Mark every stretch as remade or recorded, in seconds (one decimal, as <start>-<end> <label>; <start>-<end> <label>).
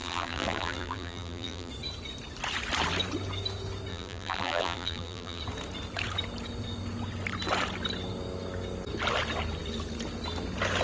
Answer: 0.0-1.7 remade; 1.7-3.9 recorded; 3.9-5.4 remade; 5.4-10.8 recorded